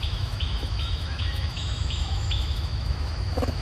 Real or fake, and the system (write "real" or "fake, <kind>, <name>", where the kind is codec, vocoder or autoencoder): fake, autoencoder, DAC-VAE